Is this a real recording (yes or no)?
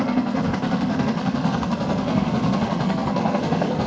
no